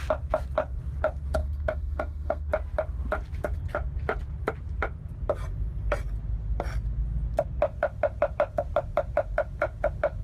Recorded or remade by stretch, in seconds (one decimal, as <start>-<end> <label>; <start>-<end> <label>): 0.0-1.4 recorded; 1.4-2.5 remade; 2.5-10.2 recorded